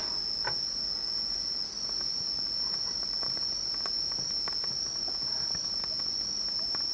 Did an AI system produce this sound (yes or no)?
no